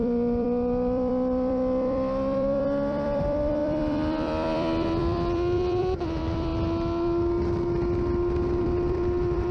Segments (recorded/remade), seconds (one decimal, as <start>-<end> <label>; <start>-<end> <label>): 0.0-6.5 remade; 6.5-8.6 recorded; 8.6-9.5 remade